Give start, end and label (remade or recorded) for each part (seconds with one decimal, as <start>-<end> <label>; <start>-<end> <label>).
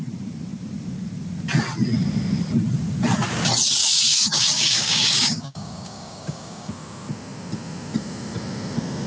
0.0-3.8 recorded; 3.8-6.7 remade; 6.7-9.1 recorded